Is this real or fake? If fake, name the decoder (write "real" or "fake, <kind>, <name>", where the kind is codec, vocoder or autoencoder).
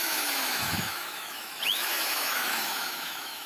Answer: fake, autoencoder, DAC-VAE